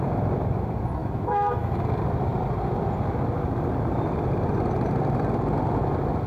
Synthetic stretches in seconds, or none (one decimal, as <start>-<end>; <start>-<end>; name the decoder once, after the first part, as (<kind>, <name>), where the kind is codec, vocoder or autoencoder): 1.0-1.8 (autoencoder, DAC-VAE)